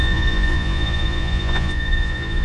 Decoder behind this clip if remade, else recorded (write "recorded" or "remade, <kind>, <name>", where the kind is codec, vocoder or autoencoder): remade, vocoder, Vocos